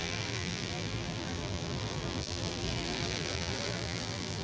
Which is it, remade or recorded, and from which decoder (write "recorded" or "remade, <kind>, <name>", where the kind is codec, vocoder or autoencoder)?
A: remade, vocoder, BigVGAN v2